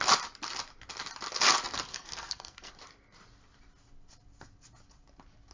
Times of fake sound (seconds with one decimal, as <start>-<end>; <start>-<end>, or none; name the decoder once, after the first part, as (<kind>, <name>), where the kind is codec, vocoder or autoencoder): 1.9-2.7 (codec, SNAC)

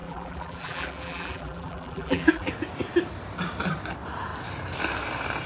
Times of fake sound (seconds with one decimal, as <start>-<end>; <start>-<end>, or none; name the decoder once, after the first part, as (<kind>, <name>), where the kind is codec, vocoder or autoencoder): 0.0-2.5 (vocoder, BigVGAN v2)

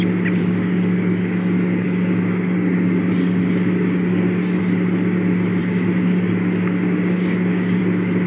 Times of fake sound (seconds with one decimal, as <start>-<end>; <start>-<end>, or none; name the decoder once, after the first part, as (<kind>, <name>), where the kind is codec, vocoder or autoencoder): 0.4-4.6 (codec, DAC); 5.6-7.8

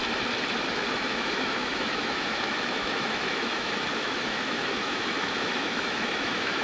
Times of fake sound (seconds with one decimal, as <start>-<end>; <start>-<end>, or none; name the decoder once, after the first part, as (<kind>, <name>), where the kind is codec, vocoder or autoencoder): 0.7-6.6 (autoencoder, DAC-VAE)